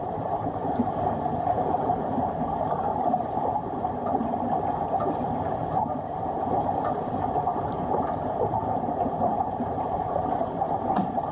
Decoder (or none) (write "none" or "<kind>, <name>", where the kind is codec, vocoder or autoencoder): vocoder, BigVGAN v2